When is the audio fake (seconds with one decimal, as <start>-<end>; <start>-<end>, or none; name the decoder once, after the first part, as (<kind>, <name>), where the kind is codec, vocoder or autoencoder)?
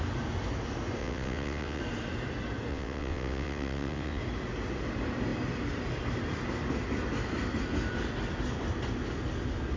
1.0-1.8 (vocoder, WaveNeXt); 2.7-4.2